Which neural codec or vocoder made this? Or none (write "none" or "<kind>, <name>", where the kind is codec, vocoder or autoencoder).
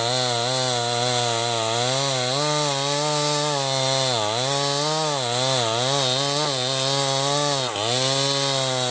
none